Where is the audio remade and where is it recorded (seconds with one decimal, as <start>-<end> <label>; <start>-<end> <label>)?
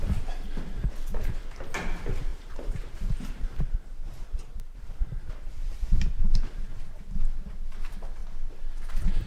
0.0-2.3 recorded; 2.3-5.9 remade; 5.9-9.3 recorded